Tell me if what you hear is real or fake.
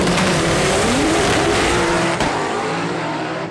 fake